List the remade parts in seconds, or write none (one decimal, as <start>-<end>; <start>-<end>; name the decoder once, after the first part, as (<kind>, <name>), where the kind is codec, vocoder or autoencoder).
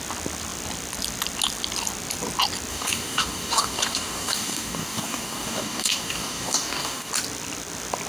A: 2.7-7.1 (codec, DAC)